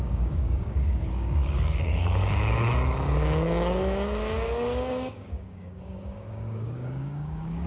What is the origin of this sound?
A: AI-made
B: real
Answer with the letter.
A